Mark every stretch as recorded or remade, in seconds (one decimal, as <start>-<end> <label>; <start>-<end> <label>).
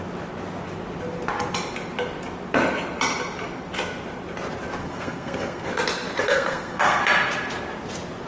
0.0-4.8 recorded; 4.8-5.7 remade; 5.7-6.2 recorded; 6.2-7.0 remade; 7.0-8.3 recorded